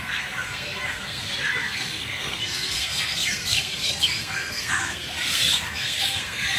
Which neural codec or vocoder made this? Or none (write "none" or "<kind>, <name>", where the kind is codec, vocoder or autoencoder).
codec, SNAC